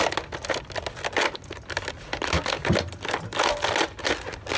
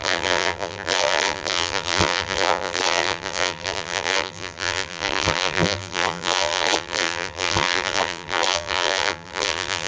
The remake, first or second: second